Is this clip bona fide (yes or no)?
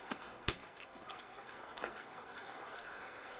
no